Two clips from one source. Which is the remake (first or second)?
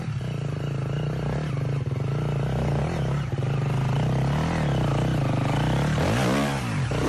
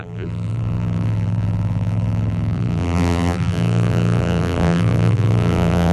second